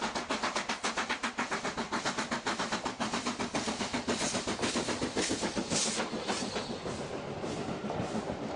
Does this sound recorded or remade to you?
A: recorded